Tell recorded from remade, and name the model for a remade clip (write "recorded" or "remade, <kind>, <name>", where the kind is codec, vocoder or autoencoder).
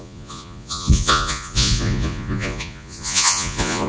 remade, vocoder, Vocos